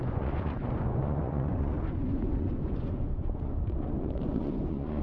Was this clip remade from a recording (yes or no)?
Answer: yes